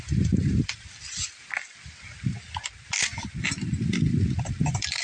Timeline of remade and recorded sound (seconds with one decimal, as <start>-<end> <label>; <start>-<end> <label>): 0.0-1.4 remade; 1.4-4.4 recorded; 4.4-5.0 remade